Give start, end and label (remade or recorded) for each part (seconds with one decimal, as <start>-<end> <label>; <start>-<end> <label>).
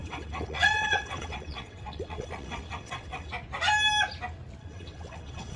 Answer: 0.0-3.3 remade; 3.3-4.6 recorded; 4.6-5.6 remade